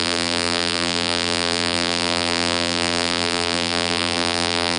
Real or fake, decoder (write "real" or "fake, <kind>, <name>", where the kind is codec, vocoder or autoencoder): fake, vocoder, BigVGAN v2